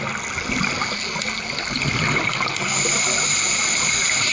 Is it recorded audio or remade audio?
recorded